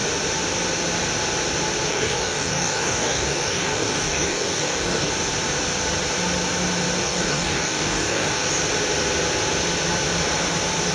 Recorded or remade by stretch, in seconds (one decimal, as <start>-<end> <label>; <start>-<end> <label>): 0.0-1.9 recorded; 1.9-5.1 remade; 5.1-7.0 recorded; 7.0-8.5 remade; 8.5-10.9 recorded